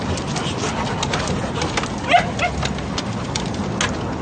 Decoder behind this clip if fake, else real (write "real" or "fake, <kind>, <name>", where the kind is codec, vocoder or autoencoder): real